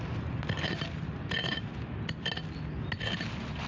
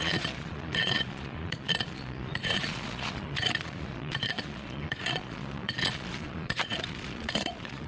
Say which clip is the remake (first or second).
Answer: second